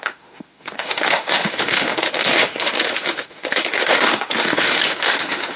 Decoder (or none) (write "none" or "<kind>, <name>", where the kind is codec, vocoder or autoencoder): autoencoder, DAC-VAE